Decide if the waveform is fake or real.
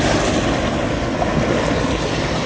real